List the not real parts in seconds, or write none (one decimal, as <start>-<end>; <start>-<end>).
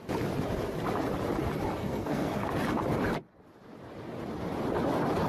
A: 1.8-2.5